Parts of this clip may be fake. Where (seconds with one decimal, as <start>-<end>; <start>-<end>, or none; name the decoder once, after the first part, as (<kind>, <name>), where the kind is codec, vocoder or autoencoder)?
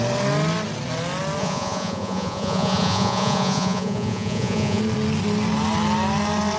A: 1.4-4.8 (vocoder, Vocos)